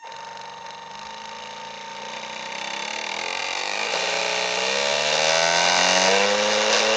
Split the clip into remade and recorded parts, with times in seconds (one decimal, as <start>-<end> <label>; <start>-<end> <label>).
0.0-3.4 recorded; 3.4-4.2 remade; 4.2-7.0 recorded